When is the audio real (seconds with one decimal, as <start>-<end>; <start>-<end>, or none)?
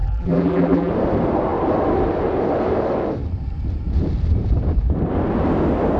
0.9-6.0